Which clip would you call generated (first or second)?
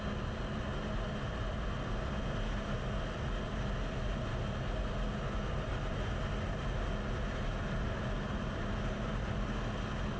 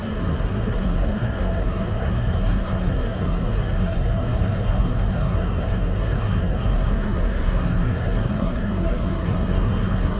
second